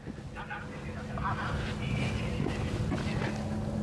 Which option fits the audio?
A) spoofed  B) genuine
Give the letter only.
B